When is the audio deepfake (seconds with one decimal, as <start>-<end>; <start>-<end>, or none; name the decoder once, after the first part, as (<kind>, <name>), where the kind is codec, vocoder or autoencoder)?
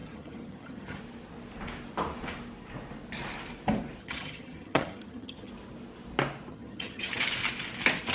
0.0-1.0 (vocoder, HiFi-GAN); 4.0-5.5; 6.5-7.1